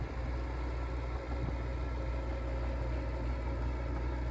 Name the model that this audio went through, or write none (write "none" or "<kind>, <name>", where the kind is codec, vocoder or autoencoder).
none